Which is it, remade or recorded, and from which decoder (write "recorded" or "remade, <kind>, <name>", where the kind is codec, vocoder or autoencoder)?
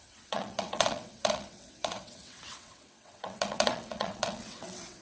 remade, vocoder, WaveNeXt